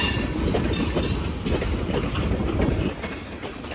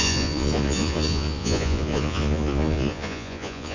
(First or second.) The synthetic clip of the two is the second